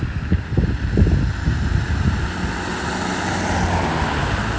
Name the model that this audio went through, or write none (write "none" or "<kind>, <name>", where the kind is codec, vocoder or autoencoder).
none